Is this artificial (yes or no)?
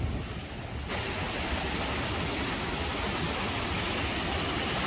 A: no